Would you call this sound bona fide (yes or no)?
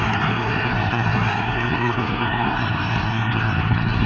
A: no